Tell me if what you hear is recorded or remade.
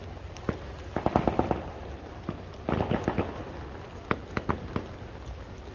recorded